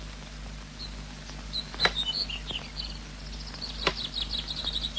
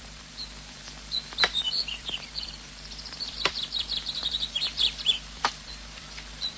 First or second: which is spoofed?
second